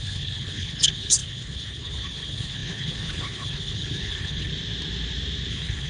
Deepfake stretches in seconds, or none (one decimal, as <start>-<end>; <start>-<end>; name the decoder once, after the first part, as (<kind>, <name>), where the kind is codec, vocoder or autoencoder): 0.0-4.5 (codec, HILCodec); 5.5-5.9